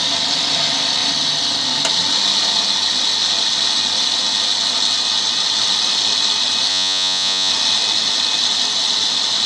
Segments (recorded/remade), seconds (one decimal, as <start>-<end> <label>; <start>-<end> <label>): 0.0-6.7 recorded; 6.7-7.5 remade; 7.5-9.5 recorded

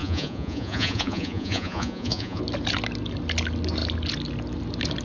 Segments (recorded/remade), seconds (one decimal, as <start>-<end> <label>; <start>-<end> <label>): 0.0-2.4 remade; 2.4-5.0 recorded

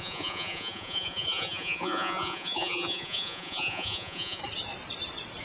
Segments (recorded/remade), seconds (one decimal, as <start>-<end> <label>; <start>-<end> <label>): 0.0-4.4 remade; 4.4-5.4 recorded

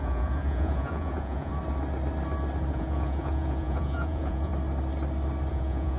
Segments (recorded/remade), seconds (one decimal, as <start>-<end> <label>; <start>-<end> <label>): 0.0-1.5 remade; 1.5-2.7 recorded; 2.7-4.5 remade; 4.5-5.5 recorded; 5.5-6.0 remade

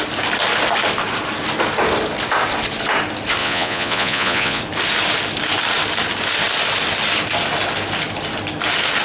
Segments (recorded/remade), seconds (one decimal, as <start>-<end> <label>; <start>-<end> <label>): 0.0-3.4 recorded; 3.4-4.6 remade; 4.6-9.0 recorded